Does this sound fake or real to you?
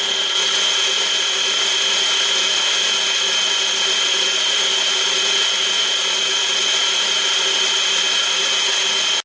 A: real